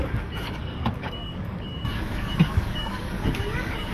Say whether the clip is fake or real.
fake